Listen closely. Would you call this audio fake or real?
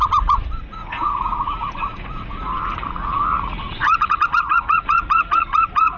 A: fake